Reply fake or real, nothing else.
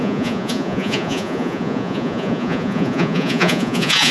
fake